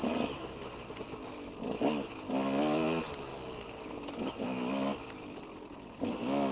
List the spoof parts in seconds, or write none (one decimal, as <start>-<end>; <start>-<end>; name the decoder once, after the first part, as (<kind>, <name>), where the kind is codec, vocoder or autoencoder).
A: none